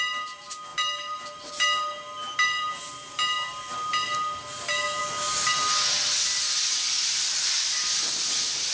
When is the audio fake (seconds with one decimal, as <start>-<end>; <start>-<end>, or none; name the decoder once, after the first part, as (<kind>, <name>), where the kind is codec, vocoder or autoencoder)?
none